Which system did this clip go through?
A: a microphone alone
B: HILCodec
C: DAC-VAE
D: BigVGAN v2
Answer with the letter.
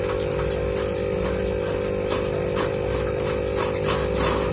A